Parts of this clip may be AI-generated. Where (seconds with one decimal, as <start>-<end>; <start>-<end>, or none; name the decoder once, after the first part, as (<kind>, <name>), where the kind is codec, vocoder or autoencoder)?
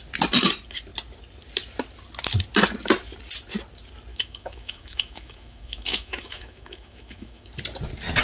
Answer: 4.1-7.5 (autoencoder, DAC-VAE)